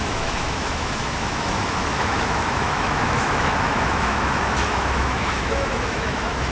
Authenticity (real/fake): fake